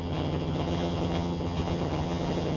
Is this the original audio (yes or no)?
no